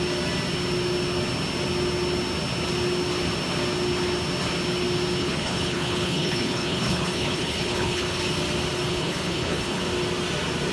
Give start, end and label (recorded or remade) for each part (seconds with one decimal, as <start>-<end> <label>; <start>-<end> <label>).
0.0-5.2 recorded; 5.2-8.2 remade; 8.2-8.9 recorded; 8.9-9.8 remade; 9.8-10.7 recorded